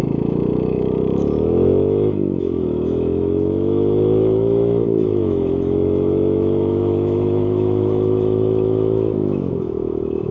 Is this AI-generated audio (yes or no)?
yes